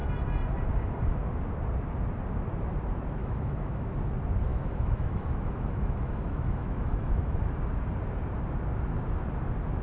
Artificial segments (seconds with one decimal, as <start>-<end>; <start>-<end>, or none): 3.2-3.9; 4.5-7.5